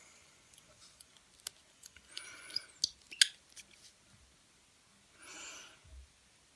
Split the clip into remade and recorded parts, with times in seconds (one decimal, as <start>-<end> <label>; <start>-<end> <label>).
0.0-1.1 remade; 1.1-1.7 recorded; 1.7-2.6 remade; 2.6-6.6 recorded